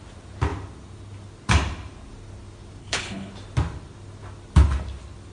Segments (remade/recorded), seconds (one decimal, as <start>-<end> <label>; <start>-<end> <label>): 0.0-2.8 recorded; 2.8-3.3 remade; 3.3-5.3 recorded